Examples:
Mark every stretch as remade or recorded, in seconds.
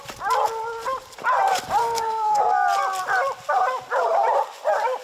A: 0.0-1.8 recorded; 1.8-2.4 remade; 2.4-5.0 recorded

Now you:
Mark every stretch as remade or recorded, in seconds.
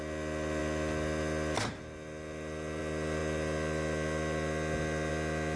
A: 0.0-5.6 recorded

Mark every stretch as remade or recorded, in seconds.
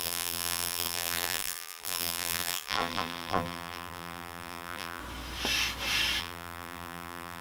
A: 0.0-5.0 remade; 5.0-6.2 recorded; 6.2-7.4 remade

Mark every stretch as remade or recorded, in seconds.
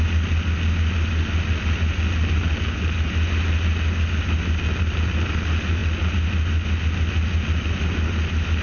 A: 0.0-8.6 recorded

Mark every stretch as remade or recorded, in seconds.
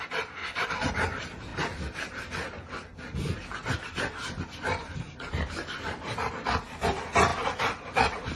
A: 0.0-0.4 recorded; 0.4-0.9 remade; 0.9-8.4 recorded